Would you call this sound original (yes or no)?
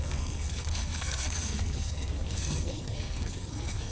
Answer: no